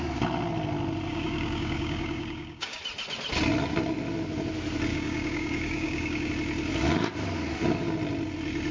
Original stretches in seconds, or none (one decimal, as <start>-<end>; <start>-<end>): 0.0-1.1; 2.8-4.9; 6.3-8.7